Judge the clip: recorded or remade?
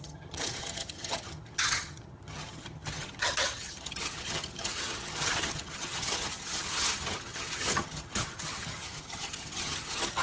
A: remade